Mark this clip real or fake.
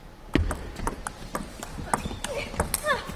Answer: real